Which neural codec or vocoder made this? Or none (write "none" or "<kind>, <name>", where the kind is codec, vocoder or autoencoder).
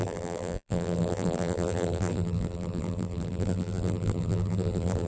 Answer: vocoder, BigVGAN v2